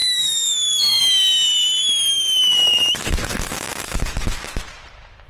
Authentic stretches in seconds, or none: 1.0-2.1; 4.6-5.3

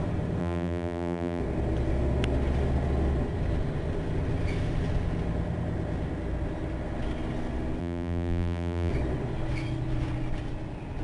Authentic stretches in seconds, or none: 0.0-0.4; 1.4-7.8; 8.9-11.0

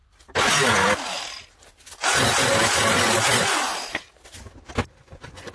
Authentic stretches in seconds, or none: 0.0-3.3; 3.7-5.0

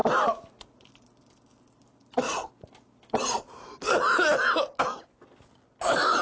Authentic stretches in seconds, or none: 0.0-6.2

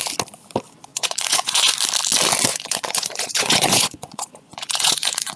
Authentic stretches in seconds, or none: 0.0-0.9; 1.7-2.5

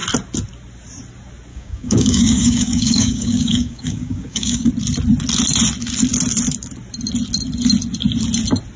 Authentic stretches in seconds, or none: 0.0-1.5; 4.7-8.8

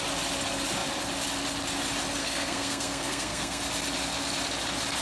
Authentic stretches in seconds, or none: 0.0-2.2; 3.6-5.0

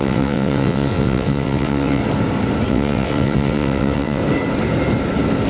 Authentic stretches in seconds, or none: 2.0-2.7; 4.2-5.5